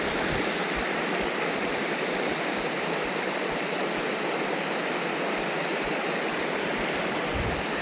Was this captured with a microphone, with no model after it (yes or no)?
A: yes